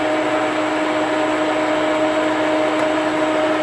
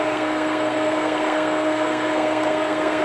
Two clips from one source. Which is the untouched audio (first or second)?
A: first